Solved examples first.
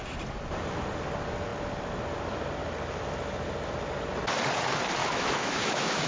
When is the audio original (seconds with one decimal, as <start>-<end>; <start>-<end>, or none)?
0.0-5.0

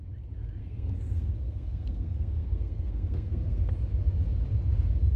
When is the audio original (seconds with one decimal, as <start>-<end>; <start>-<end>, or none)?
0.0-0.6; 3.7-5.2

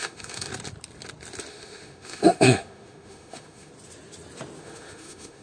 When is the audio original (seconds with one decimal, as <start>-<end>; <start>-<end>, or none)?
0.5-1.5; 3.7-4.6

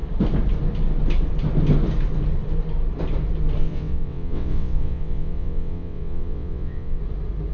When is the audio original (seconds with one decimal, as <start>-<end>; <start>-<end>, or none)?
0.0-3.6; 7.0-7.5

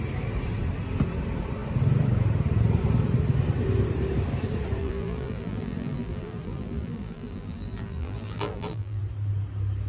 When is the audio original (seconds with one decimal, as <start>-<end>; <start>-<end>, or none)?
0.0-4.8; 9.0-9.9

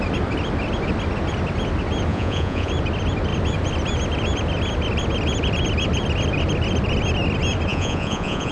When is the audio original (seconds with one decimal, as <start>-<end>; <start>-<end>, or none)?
0.0-2.1; 2.7-7.7

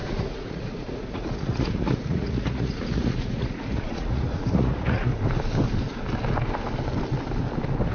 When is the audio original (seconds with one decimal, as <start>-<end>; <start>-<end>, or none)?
5.1-7.9

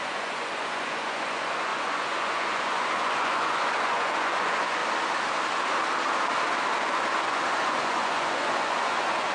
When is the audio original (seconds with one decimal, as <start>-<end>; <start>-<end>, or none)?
4.8-6.8